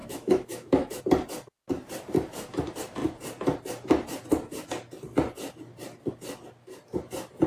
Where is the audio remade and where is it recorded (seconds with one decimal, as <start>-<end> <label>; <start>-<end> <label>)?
0.0-1.0 remade; 1.0-7.5 recorded